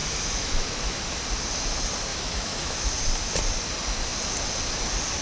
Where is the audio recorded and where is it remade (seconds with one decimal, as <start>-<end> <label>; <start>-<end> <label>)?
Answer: 0.0-1.0 remade; 1.0-2.1 recorded; 2.1-2.8 remade; 2.8-5.2 recorded